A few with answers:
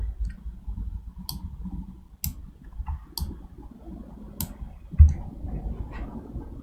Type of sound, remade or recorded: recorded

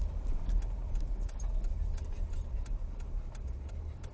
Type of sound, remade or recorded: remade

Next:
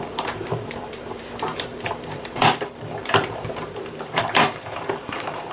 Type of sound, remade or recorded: remade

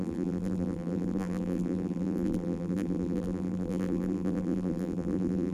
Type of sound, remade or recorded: remade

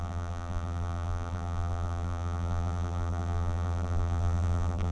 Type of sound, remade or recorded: remade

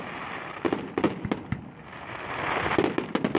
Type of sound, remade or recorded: recorded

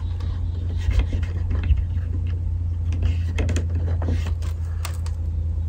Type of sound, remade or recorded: recorded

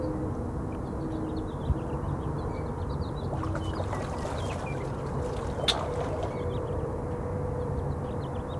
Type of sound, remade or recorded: recorded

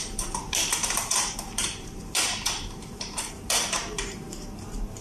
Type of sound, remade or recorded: remade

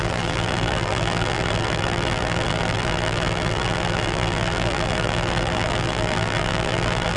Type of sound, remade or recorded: remade